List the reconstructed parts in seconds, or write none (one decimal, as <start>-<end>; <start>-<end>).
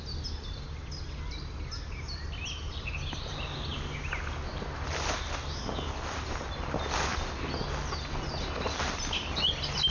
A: none